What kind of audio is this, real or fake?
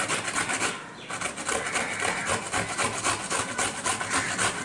real